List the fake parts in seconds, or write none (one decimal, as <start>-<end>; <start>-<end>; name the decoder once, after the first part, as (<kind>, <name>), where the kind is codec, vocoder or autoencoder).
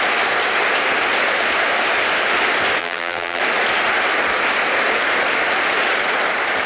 2.8-3.4 (vocoder, BigVGAN v2)